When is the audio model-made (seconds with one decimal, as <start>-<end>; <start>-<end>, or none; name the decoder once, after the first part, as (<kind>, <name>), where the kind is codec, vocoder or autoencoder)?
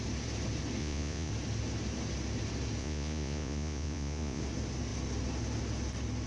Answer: 0.8-1.3 (vocoder, Vocos); 2.8-4.4